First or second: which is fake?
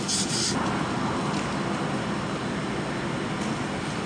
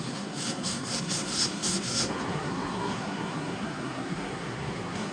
second